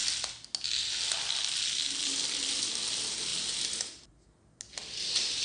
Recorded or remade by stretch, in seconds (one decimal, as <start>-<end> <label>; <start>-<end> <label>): 0.0-5.4 recorded